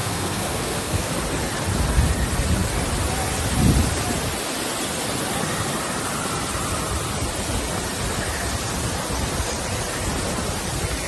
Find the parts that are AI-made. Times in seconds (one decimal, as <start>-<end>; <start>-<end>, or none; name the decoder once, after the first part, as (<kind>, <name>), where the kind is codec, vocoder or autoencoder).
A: 0.0-1.1 (codec, SNAC)